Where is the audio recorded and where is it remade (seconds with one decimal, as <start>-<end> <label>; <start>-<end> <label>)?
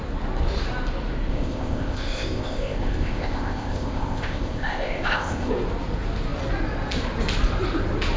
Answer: 0.0-1.3 recorded; 1.3-5.5 remade; 5.5-8.2 recorded